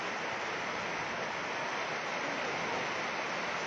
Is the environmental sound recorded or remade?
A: recorded